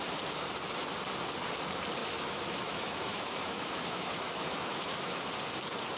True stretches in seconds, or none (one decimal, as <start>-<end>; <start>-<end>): 0.0-2.0; 5.3-6.0